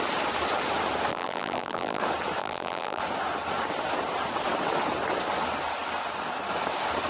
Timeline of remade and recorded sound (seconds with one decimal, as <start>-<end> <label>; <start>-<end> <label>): 0.0-1.1 recorded; 1.1-2.0 remade; 2.0-2.4 recorded; 2.4-3.0 remade; 3.0-7.1 recorded